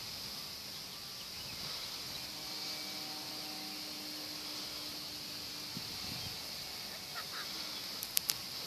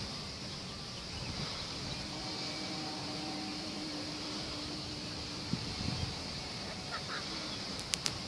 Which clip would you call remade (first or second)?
second